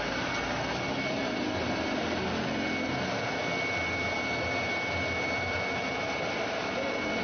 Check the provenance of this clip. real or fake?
real